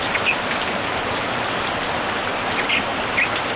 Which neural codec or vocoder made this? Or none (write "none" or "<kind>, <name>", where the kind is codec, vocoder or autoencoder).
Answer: none